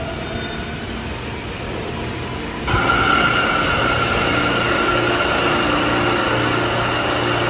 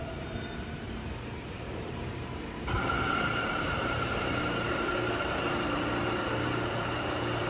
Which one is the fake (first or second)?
second